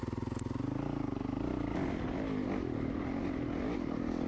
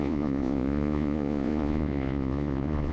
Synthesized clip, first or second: second